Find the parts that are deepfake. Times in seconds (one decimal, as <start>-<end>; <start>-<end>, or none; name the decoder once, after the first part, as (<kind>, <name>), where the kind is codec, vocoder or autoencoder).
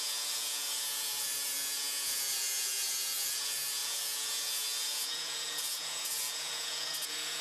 0.0-7.4 (vocoder, Vocos)